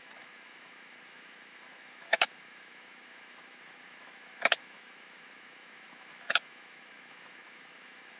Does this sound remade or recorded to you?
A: remade